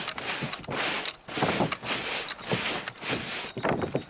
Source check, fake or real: real